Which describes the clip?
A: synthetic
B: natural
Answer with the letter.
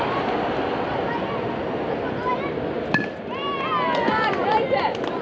B